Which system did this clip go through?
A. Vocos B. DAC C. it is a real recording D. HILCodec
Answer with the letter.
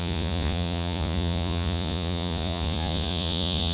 A